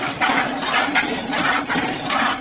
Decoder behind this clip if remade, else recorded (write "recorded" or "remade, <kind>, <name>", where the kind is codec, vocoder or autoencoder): recorded